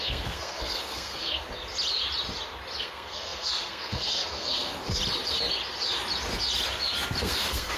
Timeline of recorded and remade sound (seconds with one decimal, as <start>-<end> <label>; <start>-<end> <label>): 0.0-1.4 remade; 1.4-2.8 recorded; 2.8-5.0 remade; 5.0-7.2 recorded; 7.2-7.8 remade